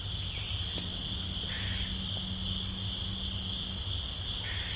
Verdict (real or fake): real